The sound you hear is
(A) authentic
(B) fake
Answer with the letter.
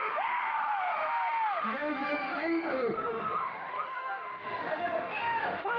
B